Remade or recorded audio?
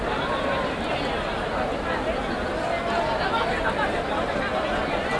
recorded